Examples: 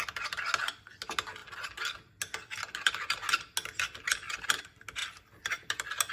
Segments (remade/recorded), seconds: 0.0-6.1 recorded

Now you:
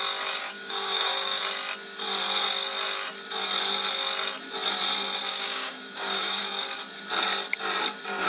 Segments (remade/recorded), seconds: 0.0-0.4 recorded; 0.4-1.4 remade; 1.4-5.3 recorded; 5.3-6.4 remade; 6.4-8.3 recorded

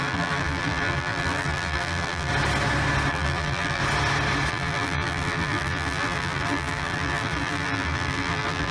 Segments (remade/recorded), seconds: 0.0-2.3 remade; 2.3-3.1 recorded; 3.1-3.8 remade; 3.8-4.5 recorded; 4.5-8.7 remade

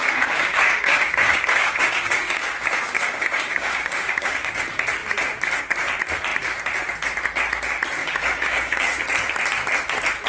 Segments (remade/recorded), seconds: 0.0-4.5 remade; 4.5-8.0 recorded; 8.0-9.0 remade; 9.0-10.3 recorded